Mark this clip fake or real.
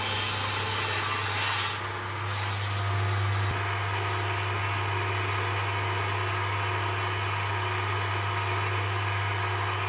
real